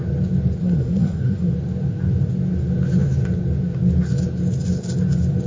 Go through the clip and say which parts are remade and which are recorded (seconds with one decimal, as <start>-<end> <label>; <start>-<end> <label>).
0.0-0.6 recorded; 0.6-1.5 remade; 1.5-5.5 recorded